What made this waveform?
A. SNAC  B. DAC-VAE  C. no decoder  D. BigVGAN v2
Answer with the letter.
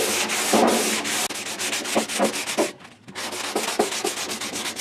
C